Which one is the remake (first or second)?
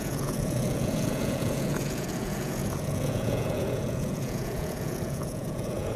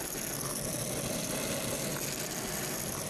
first